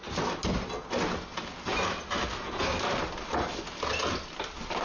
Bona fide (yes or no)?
yes